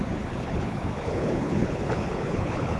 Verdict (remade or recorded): remade